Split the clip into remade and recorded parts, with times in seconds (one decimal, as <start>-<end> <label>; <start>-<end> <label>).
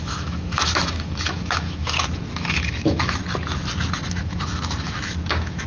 0.0-3.2 remade; 3.2-4.1 recorded; 4.1-5.7 remade